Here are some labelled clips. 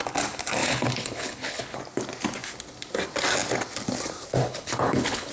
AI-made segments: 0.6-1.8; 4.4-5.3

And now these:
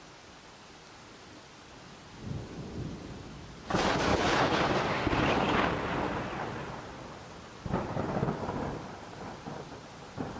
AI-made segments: 4.1-4.6

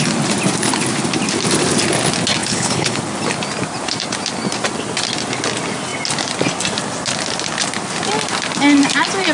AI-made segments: 2.4-3.0

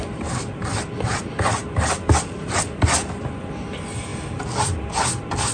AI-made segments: none